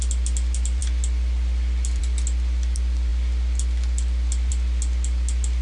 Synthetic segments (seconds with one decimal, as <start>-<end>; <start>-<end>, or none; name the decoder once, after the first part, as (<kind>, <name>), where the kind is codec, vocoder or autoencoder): none